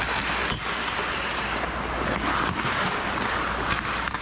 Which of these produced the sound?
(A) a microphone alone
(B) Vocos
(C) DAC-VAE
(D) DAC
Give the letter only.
A